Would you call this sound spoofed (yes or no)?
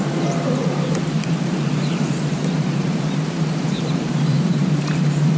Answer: yes